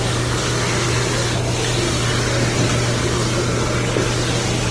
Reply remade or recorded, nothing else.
recorded